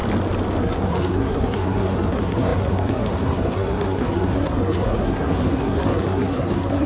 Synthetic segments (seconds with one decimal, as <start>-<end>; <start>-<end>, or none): 0.6-6.9